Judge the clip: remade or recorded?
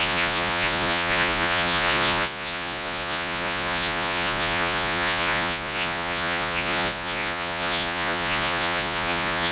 remade